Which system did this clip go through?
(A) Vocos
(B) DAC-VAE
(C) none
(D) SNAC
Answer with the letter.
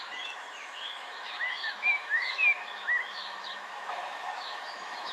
B